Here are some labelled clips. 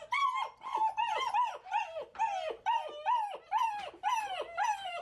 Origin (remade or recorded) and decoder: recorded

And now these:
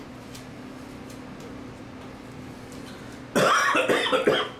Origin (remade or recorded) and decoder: recorded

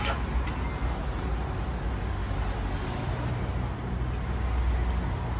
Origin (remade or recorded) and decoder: recorded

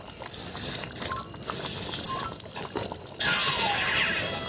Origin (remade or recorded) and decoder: recorded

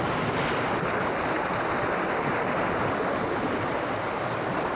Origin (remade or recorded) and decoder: recorded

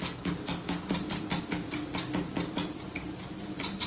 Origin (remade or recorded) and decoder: recorded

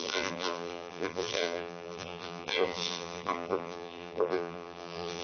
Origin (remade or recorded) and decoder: remade, vocoder, BigVGAN v2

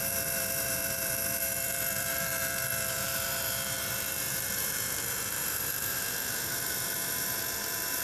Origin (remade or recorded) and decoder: remade, vocoder, BigVGAN v2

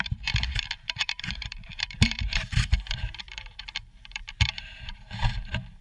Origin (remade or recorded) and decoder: remade, vocoder, BigVGAN v2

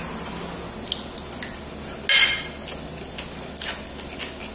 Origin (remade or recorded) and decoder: recorded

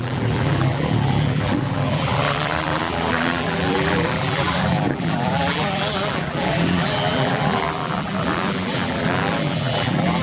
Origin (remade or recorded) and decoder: remade, vocoder, BigVGAN v2